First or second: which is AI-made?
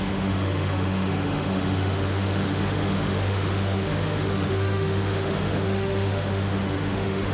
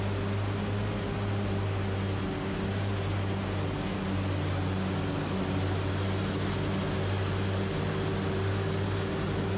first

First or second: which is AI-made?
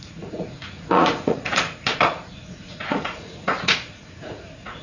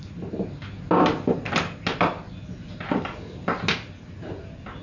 first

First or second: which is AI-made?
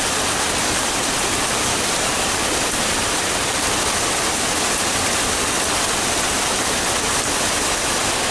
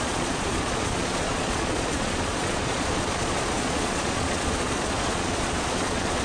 second